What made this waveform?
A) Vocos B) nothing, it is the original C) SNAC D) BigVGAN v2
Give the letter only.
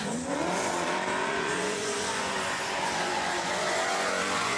A